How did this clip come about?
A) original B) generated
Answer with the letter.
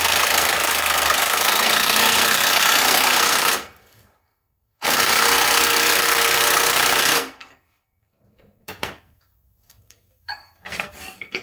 B